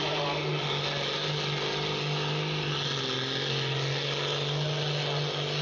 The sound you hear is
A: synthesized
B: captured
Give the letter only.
B